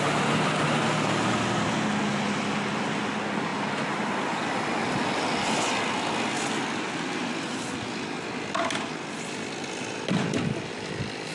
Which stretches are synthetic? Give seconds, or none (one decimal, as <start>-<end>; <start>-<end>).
none